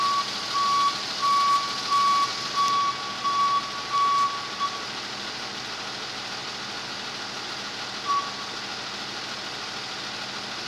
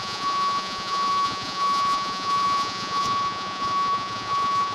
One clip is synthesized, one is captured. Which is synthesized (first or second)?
second